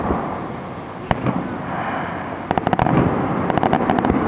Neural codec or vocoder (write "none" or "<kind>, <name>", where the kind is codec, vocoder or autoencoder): none